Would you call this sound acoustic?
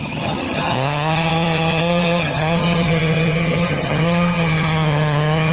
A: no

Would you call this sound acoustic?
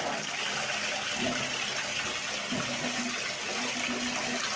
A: yes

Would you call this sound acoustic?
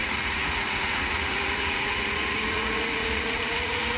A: no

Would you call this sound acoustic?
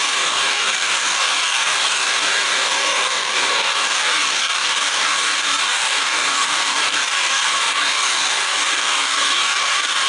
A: no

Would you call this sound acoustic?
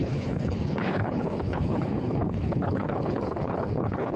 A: no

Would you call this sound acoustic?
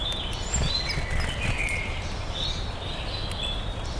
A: yes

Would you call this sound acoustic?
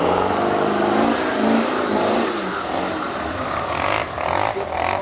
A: yes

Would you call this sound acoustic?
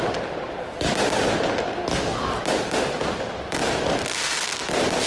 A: yes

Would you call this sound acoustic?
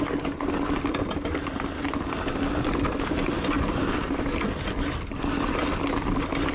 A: yes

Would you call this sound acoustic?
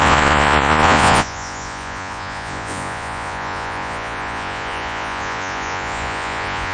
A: no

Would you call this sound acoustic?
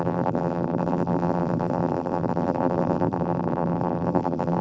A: no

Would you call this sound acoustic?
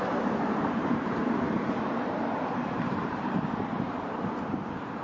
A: no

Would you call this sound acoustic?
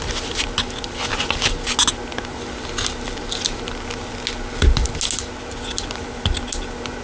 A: yes